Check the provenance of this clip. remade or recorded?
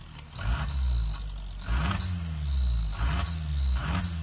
recorded